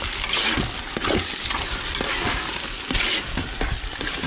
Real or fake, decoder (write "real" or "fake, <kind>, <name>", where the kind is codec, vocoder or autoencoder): real